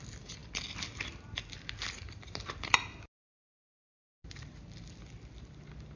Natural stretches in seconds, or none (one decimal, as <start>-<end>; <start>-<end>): 0.0-6.0